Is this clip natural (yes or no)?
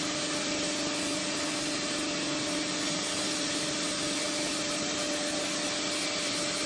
yes